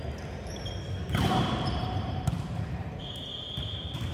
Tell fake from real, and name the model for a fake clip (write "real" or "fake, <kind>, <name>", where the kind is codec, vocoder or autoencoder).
fake, vocoder, BigVGAN v2